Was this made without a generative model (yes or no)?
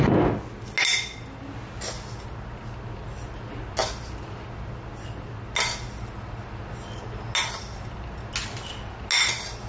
yes